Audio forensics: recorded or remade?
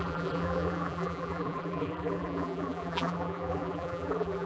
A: remade